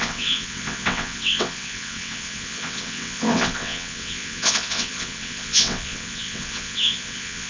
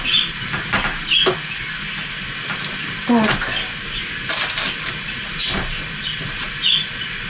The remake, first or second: first